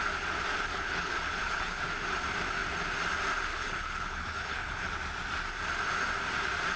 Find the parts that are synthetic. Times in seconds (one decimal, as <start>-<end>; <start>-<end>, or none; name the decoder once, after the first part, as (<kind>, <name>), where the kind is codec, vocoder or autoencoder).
0.7-1.8 (codec, HILCodec); 3.5-4.9